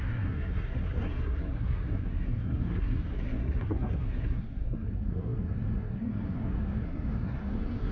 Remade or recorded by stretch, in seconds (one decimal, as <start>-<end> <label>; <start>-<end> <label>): 0.0-7.9 remade